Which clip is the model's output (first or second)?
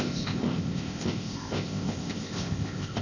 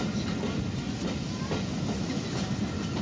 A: first